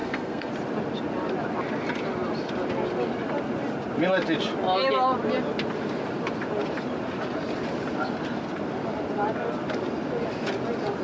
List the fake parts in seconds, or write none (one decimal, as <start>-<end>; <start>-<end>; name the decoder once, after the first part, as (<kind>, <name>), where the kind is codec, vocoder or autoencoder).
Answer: 0.0-0.5 (codec, SNAC)